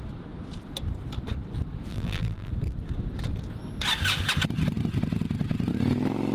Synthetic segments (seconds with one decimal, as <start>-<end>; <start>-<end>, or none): 1.9-2.5